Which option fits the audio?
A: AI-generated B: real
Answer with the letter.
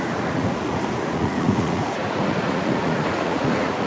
A